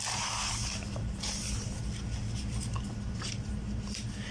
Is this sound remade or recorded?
recorded